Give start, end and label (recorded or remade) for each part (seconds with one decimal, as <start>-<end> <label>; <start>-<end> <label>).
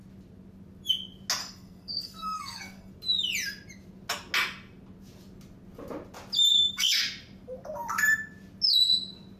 0.0-1.4 recorded; 1.4-2.9 remade; 2.9-6.5 recorded; 6.5-7.0 remade; 7.0-9.4 recorded